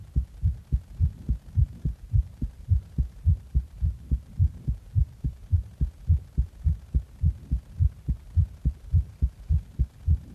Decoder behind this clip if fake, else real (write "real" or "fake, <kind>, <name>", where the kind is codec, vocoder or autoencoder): real